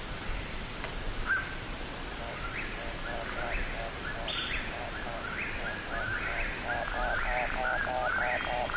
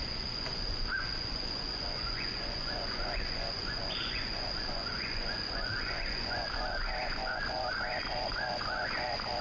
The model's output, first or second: second